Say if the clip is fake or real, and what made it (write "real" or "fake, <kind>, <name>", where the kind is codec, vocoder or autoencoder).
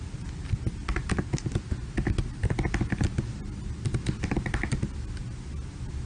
real